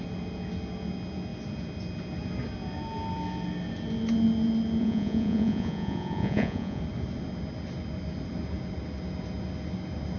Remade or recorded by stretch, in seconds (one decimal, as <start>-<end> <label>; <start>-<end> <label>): 0.0-4.8 recorded; 4.8-6.8 remade; 6.8-10.2 recorded